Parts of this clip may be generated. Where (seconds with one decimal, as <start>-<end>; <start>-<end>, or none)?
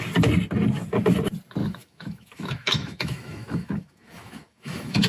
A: 1.6-5.1